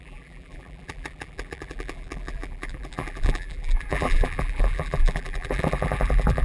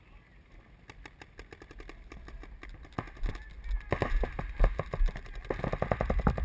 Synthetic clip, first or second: first